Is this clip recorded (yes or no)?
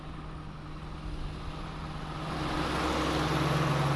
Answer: yes